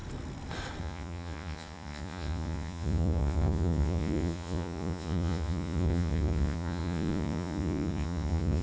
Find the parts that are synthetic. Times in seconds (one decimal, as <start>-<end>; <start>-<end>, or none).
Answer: 0.8-8.6